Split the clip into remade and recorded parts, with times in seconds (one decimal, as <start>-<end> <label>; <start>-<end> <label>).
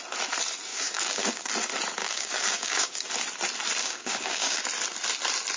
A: 0.0-0.7 recorded; 0.7-1.5 remade; 1.5-2.0 recorded; 2.0-3.1 remade; 3.1-3.8 recorded; 3.8-4.6 remade; 4.6-5.6 recorded